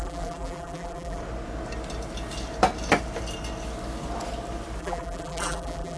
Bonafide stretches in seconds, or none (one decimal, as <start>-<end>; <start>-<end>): 1.2-4.8